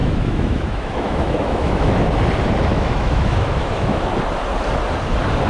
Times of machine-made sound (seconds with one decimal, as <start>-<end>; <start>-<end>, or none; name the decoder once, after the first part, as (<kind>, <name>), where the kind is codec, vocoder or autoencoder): 0.0-1.9 (autoencoder, DAC-VAE); 2.7-4.0